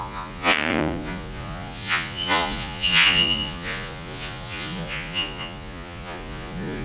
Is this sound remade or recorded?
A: remade